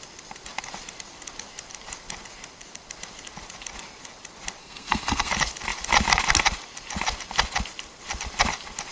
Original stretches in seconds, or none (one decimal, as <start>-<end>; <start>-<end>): 0.0-4.6; 5.3-8.9